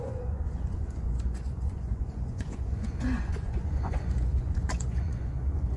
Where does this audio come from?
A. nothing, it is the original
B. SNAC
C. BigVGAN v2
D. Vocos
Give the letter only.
D